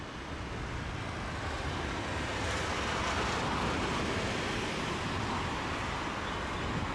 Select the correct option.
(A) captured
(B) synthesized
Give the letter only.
A